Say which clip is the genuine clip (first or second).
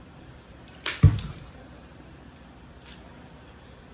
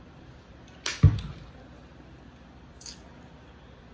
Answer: second